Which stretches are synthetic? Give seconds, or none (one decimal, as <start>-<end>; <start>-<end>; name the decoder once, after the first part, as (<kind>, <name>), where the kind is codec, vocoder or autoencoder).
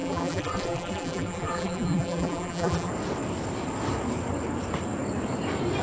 0.0-2.9 (vocoder, BigVGAN v2)